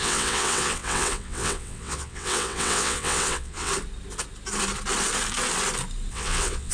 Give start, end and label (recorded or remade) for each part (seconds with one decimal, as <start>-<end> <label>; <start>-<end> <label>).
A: 0.0-3.7 remade; 3.7-6.1 recorded; 6.1-6.7 remade